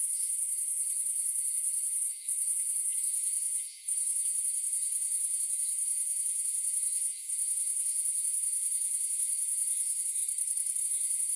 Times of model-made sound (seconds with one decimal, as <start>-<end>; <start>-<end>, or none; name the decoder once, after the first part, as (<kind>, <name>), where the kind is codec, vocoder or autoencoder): 0.0-10.2 (vocoder, Vocos); 10.8-11.4